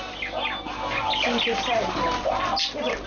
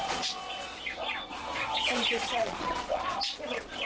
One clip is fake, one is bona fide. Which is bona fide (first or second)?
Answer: first